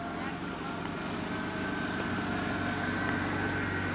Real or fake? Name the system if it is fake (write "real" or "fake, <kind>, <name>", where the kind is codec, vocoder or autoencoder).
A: real